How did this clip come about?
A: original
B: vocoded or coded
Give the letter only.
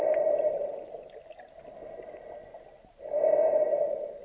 A